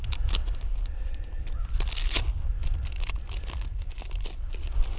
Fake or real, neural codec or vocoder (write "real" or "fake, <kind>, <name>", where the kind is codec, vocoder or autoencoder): real